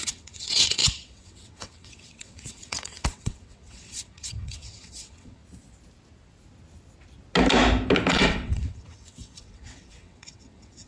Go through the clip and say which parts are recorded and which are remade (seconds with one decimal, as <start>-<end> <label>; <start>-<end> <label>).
0.0-5.4 remade; 5.4-8.1 recorded; 8.1-10.9 remade